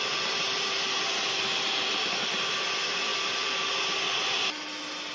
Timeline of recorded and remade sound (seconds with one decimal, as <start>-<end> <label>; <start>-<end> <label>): 0.0-5.1 recorded